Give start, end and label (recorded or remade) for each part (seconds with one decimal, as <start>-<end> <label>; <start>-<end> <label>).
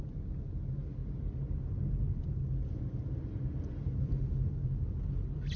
0.0-5.6 recorded